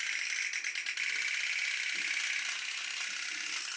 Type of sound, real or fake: real